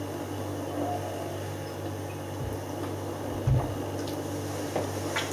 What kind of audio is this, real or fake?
real